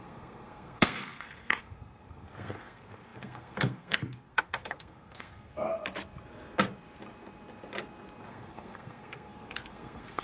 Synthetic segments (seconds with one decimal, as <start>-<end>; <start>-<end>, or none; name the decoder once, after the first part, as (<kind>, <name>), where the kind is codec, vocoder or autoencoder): 0.0-5.5 (codec, SNAC); 8.3-10.2

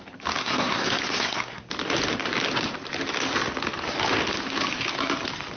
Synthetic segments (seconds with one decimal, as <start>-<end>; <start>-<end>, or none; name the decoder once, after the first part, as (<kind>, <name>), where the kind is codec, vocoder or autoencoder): 0.4-1.7 (codec, SNAC)

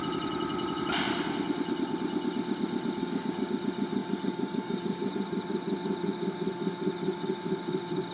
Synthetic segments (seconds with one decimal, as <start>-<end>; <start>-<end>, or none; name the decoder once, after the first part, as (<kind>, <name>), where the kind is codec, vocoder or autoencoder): 3.0-3.5 (codec, DAC); 4.0-5.1

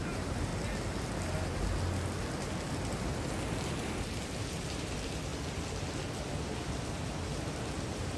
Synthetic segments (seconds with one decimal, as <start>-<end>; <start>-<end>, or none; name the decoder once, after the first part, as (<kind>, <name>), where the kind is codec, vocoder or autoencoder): 0.0-0.5 (vocoder, BigVGAN v2); 3.8-5.3; 7.0-8.2

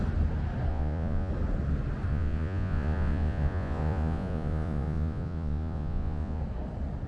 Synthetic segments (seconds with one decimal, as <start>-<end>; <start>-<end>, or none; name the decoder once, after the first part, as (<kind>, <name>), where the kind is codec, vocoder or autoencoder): 0.7-1.3 (vocoder, Vocos); 2.1-6.4

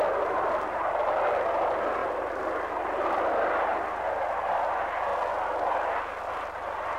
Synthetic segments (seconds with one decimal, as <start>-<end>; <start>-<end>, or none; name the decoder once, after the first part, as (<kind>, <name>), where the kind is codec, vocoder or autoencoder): none